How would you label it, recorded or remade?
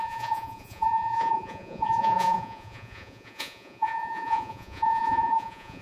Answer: remade